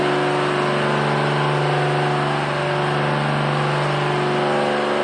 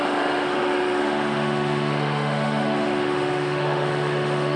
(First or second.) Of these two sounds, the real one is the first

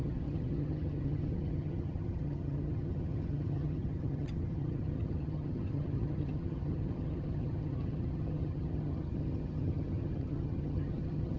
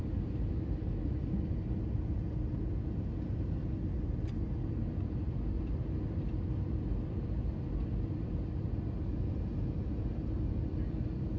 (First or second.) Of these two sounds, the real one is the second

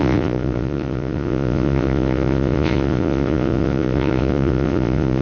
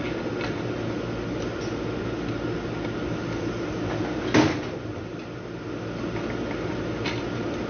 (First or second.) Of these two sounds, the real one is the second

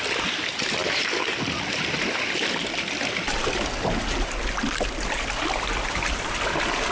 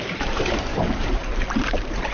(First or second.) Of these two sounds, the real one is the first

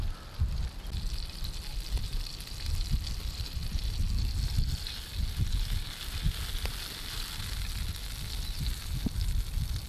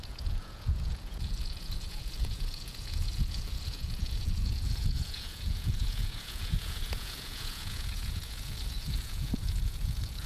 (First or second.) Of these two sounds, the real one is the first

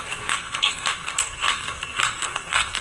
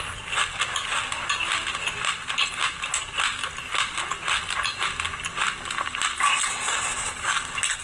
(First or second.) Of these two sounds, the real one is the second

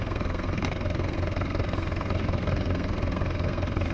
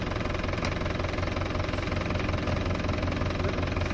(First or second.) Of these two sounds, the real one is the second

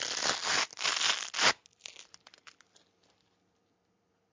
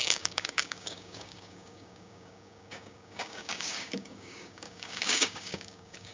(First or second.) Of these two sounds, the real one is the first